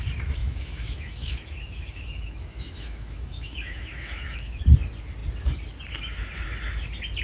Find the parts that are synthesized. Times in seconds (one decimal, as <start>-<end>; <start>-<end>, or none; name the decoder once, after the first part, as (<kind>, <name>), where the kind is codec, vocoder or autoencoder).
0.4-4.6 (autoencoder, DAC-VAE)